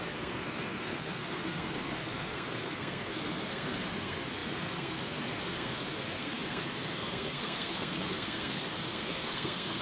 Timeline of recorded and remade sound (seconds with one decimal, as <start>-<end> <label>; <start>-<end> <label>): 0.0-9.8 remade